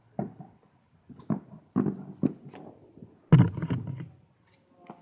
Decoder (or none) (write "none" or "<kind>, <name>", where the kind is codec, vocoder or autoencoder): none